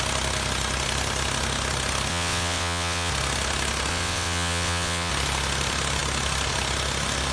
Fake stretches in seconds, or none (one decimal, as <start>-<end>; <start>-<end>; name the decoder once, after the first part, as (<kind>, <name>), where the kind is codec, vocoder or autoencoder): 2.1-3.1 (vocoder, WaveNeXt); 3.9-5.1